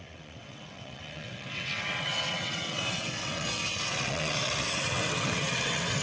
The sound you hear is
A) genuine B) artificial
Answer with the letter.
B